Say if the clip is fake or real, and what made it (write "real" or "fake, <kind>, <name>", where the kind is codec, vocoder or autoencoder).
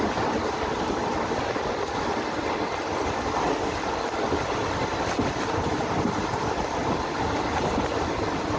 real